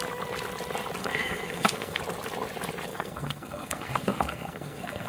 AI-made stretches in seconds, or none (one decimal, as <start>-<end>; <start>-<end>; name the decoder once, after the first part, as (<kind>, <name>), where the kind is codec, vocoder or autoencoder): 1.0-2.0 (codec, SNAC); 2.9-5.1